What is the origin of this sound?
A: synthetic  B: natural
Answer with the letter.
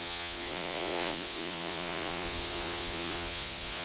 A